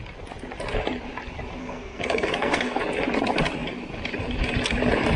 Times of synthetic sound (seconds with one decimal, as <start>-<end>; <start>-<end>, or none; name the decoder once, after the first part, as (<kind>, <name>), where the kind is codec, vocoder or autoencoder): 1.6-2.8 (codec, SNAC)